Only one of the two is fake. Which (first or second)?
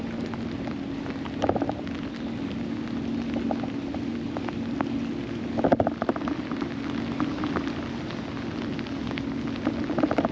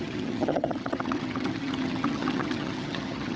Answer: second